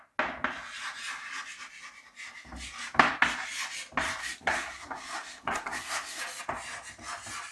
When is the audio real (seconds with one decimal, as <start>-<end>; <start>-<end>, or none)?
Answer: 0.0-4.2; 6.2-7.5